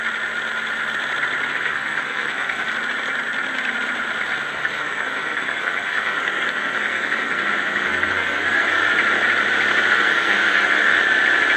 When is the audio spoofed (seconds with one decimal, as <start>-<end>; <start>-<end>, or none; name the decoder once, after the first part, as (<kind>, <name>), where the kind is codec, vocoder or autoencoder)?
1.5-2.7 (codec, SNAC); 4.5-8.9; 9.9-11.0